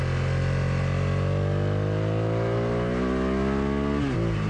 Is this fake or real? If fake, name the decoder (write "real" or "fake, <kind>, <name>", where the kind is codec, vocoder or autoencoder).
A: real